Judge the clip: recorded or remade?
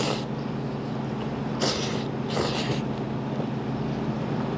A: recorded